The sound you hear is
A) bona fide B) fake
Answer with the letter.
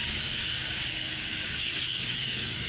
B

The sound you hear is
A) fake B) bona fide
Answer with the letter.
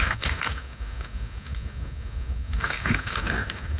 A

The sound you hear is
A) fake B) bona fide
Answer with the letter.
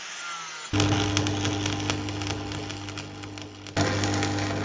B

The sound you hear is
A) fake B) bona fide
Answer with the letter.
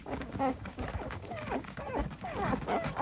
A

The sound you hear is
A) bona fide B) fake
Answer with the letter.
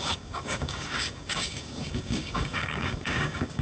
B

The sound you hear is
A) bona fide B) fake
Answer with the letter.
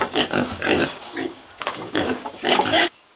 B